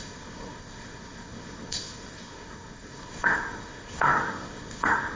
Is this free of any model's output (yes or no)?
no